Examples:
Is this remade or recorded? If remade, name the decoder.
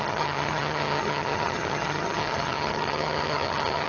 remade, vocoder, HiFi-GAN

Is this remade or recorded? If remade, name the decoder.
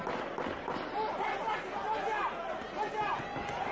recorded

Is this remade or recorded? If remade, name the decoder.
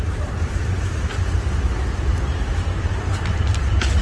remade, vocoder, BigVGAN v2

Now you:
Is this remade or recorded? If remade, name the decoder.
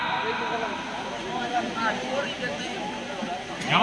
recorded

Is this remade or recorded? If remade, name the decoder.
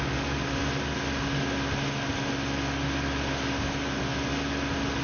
recorded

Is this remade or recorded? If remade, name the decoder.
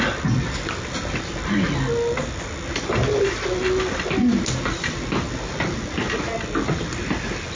recorded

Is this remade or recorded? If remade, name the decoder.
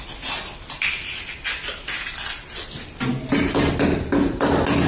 recorded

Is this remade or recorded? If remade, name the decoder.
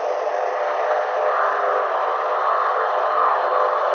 recorded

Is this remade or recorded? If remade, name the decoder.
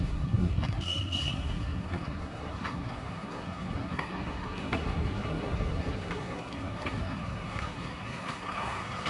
remade, codec, SNAC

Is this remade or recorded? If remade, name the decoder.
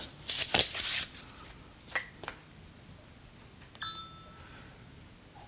recorded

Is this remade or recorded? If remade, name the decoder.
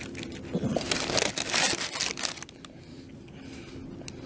recorded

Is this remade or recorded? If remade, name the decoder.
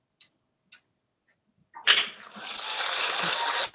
recorded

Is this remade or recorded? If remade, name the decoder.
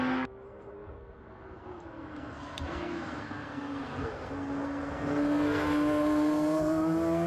remade, codec, SNAC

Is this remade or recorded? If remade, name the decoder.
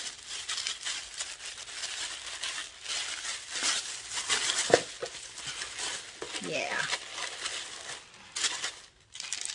recorded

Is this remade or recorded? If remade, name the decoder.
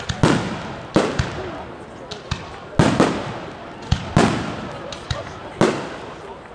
recorded